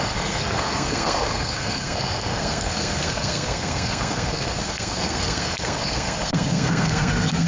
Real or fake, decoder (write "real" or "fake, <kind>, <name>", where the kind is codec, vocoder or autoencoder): fake, codec, SNAC